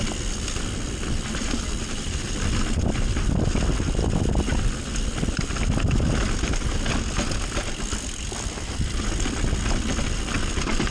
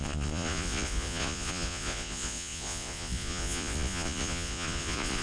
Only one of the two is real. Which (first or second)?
first